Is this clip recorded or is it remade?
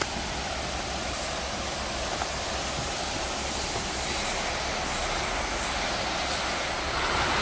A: recorded